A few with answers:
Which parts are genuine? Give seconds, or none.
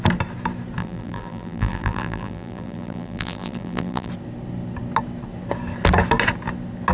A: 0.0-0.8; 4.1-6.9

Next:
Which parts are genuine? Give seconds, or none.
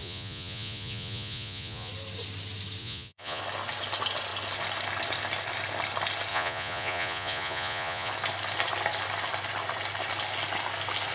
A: 1.9-2.8; 3.4-6.3; 8.1-11.1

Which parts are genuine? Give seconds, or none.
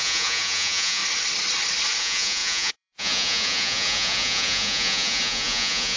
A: 1.0-2.0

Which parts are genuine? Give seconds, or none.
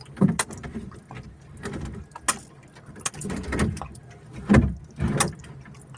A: 0.0-6.0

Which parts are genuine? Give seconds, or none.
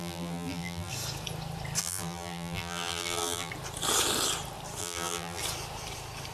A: 0.9-1.8; 3.5-4.8; 5.4-6.3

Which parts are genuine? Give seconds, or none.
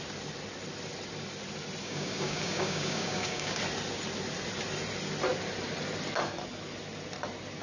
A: 0.0-1.8; 3.6-7.6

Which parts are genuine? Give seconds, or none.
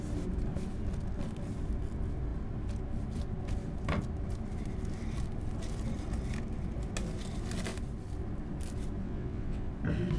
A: 0.0-9.0; 9.7-10.2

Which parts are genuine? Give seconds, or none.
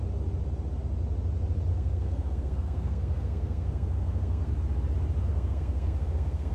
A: 0.0-1.7; 4.5-5.3